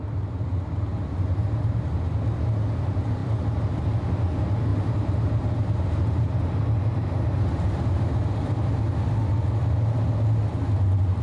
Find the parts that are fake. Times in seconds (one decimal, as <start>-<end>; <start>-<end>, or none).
4.7-8.8